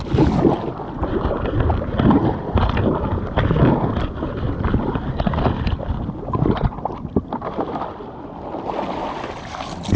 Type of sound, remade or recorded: recorded